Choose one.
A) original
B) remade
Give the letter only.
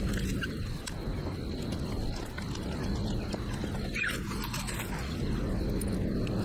A